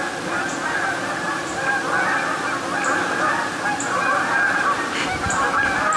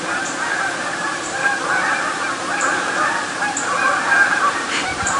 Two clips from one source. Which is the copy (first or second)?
second